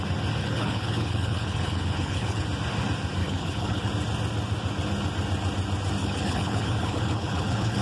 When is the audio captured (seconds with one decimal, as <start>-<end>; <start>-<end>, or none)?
0.0-0.4; 2.4-3.2; 3.9-6.0